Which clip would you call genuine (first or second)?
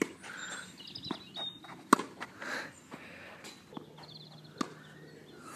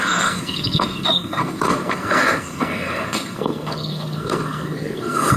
first